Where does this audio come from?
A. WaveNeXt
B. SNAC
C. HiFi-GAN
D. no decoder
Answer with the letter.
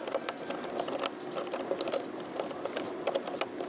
D